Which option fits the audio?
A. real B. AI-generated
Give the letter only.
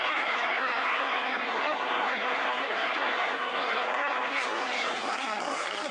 B